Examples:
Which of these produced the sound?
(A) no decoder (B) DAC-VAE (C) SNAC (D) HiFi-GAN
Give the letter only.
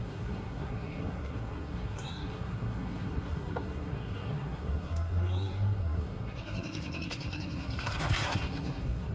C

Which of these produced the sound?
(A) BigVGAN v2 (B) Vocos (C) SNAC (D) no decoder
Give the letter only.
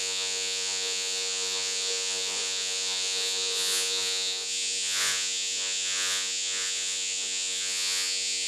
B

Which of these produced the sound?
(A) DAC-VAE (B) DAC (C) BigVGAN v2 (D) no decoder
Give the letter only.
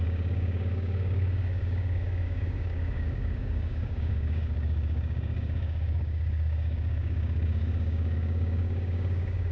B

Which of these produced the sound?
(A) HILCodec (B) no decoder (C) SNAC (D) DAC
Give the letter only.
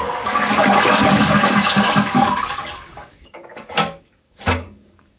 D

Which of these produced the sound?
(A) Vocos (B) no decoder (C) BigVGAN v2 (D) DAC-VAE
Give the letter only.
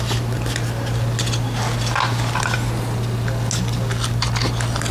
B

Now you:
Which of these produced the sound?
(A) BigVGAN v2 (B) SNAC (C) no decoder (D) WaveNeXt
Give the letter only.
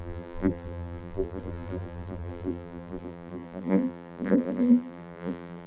A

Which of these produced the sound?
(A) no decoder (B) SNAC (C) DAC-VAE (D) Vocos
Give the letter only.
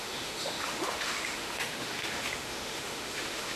C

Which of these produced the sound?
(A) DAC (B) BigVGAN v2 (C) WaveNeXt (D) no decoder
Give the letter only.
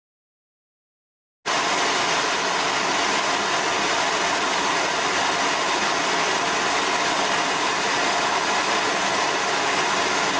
D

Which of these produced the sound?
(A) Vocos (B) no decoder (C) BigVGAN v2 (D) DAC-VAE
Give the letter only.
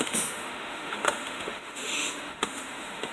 D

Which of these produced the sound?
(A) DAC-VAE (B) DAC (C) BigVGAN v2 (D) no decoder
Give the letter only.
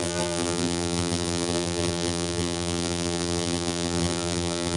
C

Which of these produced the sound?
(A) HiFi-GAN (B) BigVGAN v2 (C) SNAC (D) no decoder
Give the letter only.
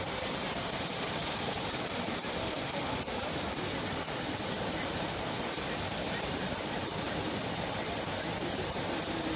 B